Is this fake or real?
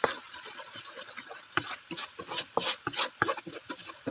real